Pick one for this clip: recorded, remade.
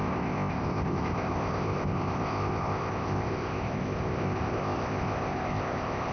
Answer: remade